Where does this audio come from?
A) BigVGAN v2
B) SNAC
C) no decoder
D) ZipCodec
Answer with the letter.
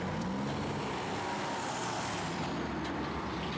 C